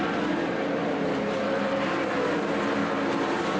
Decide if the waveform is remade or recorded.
recorded